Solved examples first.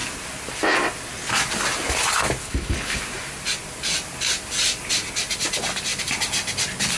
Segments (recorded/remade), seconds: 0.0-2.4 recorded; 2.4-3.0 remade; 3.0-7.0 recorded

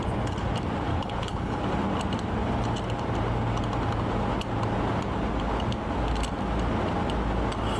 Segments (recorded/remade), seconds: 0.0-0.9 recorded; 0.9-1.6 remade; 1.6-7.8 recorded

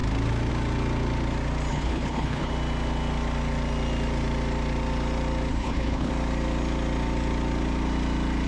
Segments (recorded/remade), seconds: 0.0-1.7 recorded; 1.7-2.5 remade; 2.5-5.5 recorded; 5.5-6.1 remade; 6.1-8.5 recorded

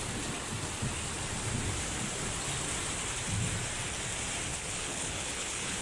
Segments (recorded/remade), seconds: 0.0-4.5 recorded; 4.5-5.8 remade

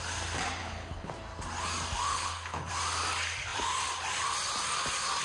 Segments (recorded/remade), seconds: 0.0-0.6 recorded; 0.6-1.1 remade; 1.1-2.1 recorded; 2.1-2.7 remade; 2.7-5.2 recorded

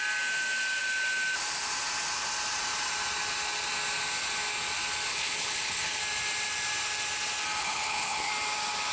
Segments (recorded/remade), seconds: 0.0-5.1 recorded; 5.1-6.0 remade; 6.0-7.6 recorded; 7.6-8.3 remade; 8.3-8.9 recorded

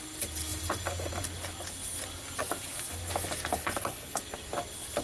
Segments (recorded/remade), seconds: 0.0-3.5 recorded; 3.5-4.2 remade; 4.2-5.0 recorded

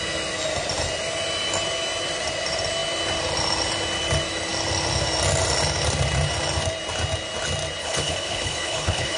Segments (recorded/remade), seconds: 0.0-7.8 recorded; 7.8-9.2 remade